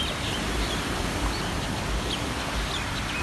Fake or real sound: real